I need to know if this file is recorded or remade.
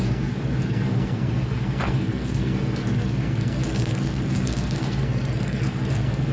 remade